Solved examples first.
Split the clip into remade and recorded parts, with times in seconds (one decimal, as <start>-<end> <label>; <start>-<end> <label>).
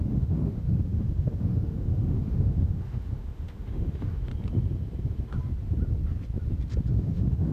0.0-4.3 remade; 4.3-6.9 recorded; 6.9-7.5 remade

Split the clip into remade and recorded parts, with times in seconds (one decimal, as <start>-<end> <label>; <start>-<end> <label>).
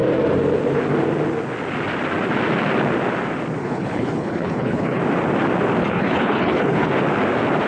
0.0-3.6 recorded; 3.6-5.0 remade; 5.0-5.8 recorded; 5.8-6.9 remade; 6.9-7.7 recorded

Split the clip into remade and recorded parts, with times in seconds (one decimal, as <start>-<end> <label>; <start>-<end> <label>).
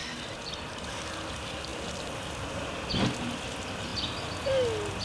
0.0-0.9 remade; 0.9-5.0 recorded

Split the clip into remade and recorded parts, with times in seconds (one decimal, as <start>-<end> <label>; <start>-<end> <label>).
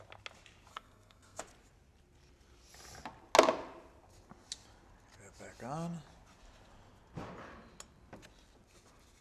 0.0-0.7 recorded; 0.7-1.4 remade; 1.4-9.2 recorded